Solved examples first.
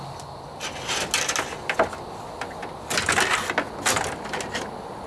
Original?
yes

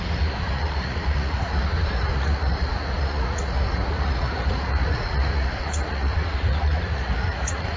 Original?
no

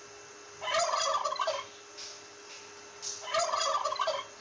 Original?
yes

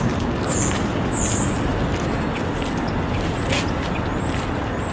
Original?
yes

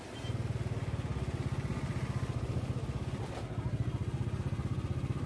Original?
yes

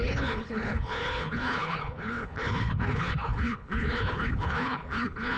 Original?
no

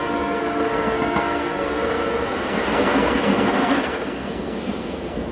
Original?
no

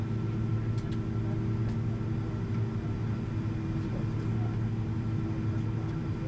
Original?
yes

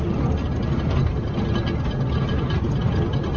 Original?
yes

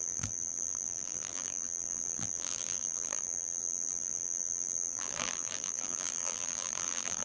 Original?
no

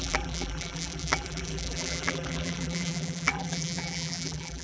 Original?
no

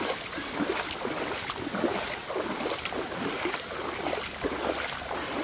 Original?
yes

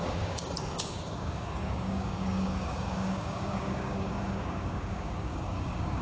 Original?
no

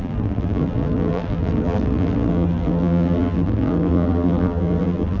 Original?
no